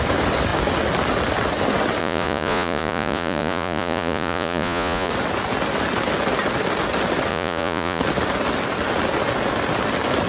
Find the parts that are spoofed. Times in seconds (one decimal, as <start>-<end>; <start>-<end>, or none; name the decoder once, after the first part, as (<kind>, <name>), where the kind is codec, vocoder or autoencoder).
2.0-5.1 (vocoder, Vocos); 7.3-8.0